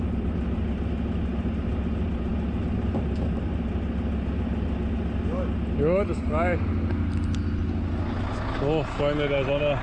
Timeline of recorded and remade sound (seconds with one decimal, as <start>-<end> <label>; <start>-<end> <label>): 0.0-9.8 recorded